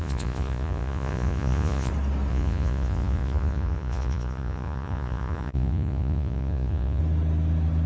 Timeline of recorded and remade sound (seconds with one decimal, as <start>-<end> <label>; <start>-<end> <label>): 0.0-1.9 remade; 1.9-2.3 recorded; 2.3-7.0 remade; 7.0-7.9 recorded